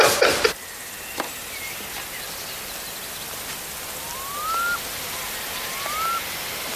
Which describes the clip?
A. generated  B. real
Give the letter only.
B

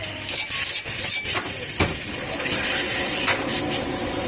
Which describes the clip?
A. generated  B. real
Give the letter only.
B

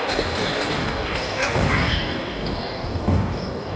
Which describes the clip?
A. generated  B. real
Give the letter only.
A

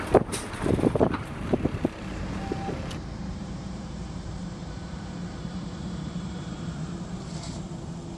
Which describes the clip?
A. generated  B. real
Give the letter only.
A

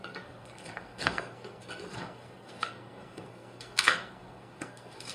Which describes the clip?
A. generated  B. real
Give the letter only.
A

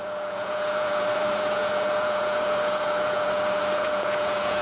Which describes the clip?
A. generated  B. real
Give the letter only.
A